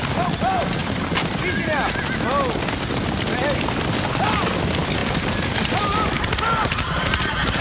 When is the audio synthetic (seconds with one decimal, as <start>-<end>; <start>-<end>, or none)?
5.0-7.6